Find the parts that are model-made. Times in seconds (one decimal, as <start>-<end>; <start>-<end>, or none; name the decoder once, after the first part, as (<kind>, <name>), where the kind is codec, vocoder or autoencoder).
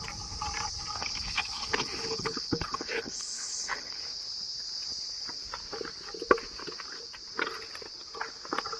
1.0-4.0 (codec, HILCodec)